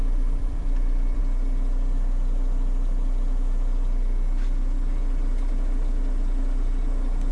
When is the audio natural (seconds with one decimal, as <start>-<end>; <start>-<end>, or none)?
1.2-7.3